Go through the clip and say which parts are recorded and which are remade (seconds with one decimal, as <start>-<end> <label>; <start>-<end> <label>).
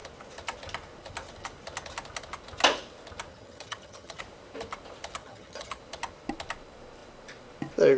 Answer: 0.0-3.3 recorded; 3.3-4.2 remade; 4.2-5.2 recorded; 5.2-5.8 remade; 5.8-8.0 recorded